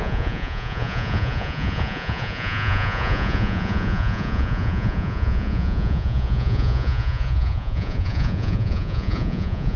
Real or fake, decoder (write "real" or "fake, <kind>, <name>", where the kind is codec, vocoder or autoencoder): fake, vocoder, Vocos